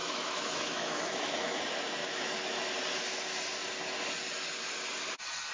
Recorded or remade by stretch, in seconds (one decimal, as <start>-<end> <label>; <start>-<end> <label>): 0.0-1.6 remade; 1.6-2.0 recorded; 2.0-2.7 remade; 2.7-5.5 recorded